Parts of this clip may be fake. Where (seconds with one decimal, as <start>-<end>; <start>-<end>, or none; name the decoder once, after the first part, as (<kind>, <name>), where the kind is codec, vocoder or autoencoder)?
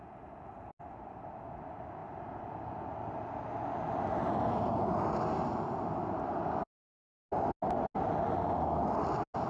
none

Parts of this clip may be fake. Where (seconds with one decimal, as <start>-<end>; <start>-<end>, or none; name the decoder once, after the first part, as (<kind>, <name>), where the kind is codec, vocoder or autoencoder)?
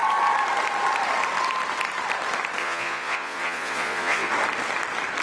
2.6-4.3 (vocoder, Vocos)